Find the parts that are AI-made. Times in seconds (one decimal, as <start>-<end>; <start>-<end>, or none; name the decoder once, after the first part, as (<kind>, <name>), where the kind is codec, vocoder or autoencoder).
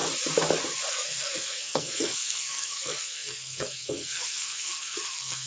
0.9-5.5 (codec, SNAC)